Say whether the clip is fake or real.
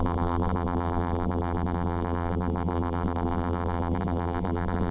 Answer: fake